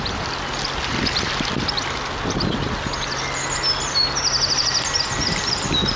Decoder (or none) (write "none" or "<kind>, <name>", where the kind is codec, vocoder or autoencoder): none